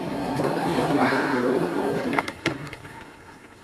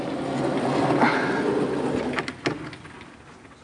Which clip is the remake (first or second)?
first